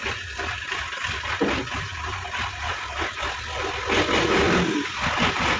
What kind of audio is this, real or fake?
real